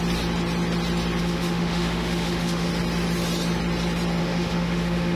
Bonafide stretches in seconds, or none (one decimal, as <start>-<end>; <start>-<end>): 0.0-1.2; 2.7-4.2